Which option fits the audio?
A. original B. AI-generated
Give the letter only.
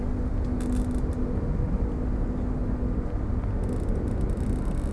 A